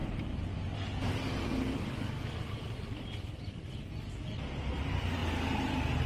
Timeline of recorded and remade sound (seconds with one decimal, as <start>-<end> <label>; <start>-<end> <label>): 0.0-5.2 remade; 5.2-6.1 recorded